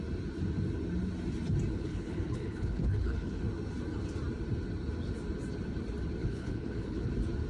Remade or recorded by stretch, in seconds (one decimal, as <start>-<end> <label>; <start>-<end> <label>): 0.0-1.7 recorded; 1.7-3.4 remade; 3.4-6.2 recorded; 6.2-7.1 remade; 7.1-7.5 recorded